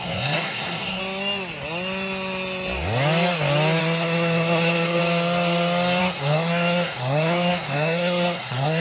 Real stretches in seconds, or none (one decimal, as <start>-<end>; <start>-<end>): 1.0-3.8; 5.0-6.0